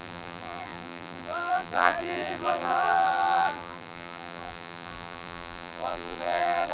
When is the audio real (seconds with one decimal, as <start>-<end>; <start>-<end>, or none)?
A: none